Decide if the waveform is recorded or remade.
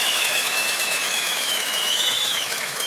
remade